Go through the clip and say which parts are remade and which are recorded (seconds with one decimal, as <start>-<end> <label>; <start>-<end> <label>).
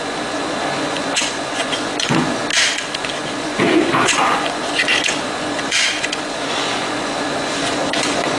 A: 0.0-2.4 remade; 2.4-3.0 recorded; 3.0-8.4 remade